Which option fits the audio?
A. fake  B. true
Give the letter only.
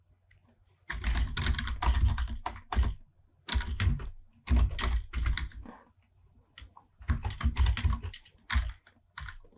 B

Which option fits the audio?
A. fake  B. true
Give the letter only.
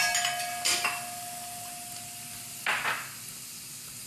B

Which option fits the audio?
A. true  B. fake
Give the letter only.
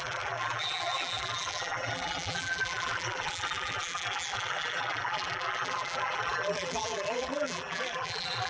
B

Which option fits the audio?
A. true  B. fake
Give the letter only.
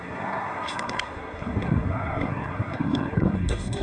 B